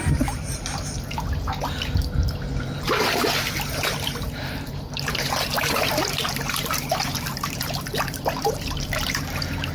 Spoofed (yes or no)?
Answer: yes